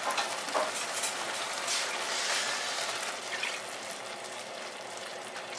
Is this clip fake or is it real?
fake